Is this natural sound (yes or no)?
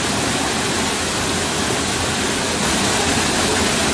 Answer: yes